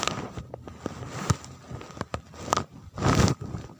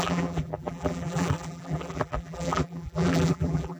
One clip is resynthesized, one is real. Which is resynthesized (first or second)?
second